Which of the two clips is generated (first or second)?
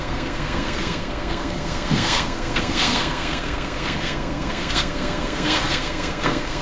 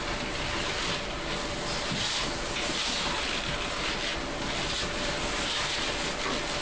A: first